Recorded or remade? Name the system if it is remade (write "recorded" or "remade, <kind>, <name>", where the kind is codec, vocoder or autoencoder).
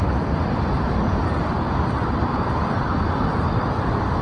remade, vocoder, BigVGAN v2